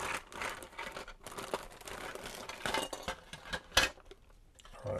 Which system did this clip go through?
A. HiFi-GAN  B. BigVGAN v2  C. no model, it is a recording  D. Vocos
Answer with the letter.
C